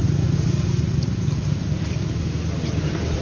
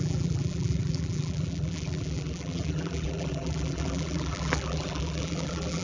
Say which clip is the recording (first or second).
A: first